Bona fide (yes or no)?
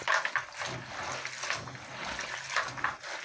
yes